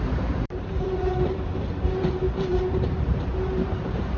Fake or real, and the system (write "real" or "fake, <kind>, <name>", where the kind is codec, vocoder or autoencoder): fake, vocoder, BigVGAN v2